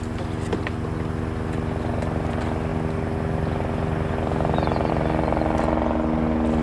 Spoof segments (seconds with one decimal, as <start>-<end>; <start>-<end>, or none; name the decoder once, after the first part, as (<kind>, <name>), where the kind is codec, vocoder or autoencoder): none